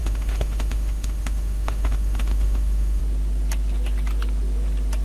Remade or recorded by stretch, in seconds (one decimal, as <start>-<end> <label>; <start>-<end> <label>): 0.0-3.0 remade; 3.0-5.0 recorded